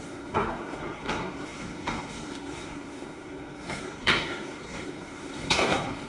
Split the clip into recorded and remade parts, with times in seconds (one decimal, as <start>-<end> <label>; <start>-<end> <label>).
0.0-6.1 remade